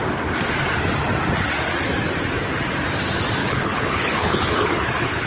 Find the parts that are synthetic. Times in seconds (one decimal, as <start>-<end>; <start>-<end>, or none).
3.4-5.3